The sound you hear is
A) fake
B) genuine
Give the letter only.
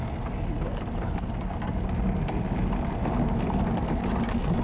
B